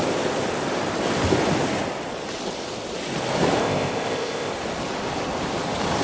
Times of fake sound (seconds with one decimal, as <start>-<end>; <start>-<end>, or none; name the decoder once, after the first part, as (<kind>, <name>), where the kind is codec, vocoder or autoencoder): 3.6-4.5 (codec, ZipCodec)